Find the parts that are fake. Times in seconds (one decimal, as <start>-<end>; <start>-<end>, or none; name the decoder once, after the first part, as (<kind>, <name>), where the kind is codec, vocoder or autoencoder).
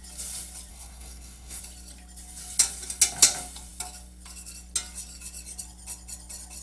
0.7-1.6 (codec, SNAC)